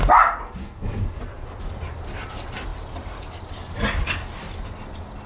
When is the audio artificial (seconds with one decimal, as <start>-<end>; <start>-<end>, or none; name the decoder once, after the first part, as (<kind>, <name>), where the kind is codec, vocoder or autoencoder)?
0.6-1.2 (codec, SNAC)